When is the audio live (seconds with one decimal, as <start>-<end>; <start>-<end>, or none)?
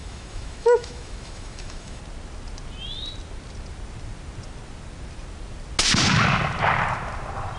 2.0-7.6